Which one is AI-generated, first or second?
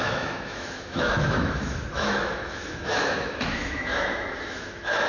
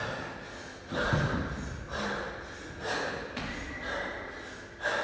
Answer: first